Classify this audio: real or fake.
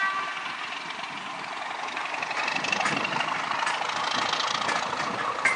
real